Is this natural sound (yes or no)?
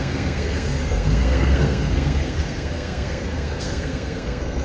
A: no